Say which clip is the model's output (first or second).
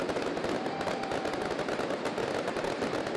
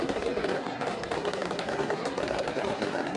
second